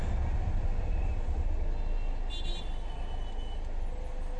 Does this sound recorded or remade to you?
recorded